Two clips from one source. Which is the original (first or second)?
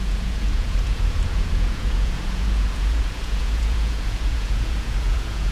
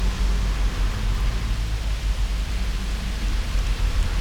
second